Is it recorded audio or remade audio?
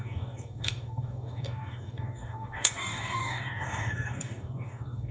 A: remade